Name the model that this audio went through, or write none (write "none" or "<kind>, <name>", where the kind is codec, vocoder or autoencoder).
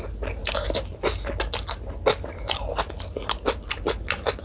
none